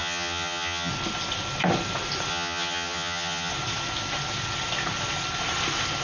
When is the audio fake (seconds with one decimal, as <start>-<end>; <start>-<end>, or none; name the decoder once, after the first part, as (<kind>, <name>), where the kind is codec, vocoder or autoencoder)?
0.0-0.9 (vocoder, HiFi-GAN); 2.3-3.5